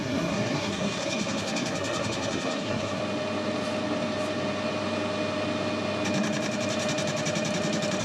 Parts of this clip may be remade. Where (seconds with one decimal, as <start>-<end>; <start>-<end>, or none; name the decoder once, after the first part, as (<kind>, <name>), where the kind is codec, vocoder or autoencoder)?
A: 0.0-3.0 (codec, SNAC)